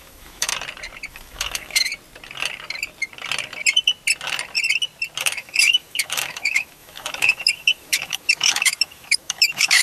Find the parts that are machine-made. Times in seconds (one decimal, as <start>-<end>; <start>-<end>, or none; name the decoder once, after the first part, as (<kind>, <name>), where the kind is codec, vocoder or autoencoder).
0.0-0.5 (autoencoder, DAC-VAE); 1.1-1.9; 5.2-9.8